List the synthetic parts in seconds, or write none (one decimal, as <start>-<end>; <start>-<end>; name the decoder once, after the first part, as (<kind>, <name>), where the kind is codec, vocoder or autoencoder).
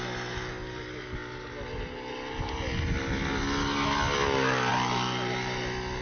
none